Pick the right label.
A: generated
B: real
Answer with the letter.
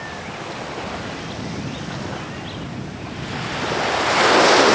B